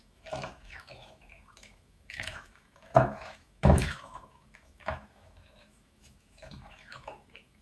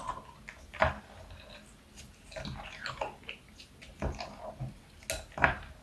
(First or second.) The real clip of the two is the second